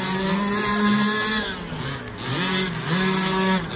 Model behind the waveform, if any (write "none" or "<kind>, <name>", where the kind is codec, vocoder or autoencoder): none